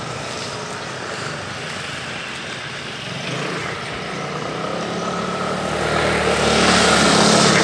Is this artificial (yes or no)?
no